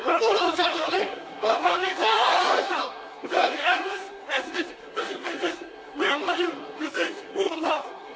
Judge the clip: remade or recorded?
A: remade